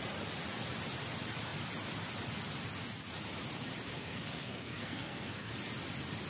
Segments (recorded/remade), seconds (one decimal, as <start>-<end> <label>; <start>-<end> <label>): 0.0-3.9 recorded; 3.9-5.5 remade; 5.5-6.3 recorded